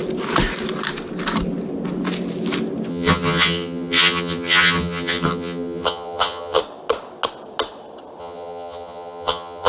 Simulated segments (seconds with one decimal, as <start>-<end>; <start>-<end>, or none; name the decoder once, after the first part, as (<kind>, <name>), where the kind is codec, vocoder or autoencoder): 2.9-6.6 (vocoder, HiFi-GAN); 8.2-9.7